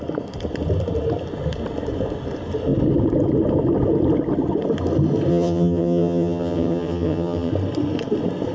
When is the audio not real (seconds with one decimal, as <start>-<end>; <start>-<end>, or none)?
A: 5.3-7.5